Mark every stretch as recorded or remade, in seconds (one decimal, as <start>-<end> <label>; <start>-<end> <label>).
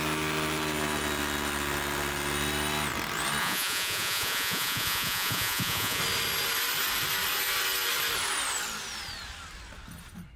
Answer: 0.0-3.4 recorded; 3.4-6.0 remade; 6.0-10.4 recorded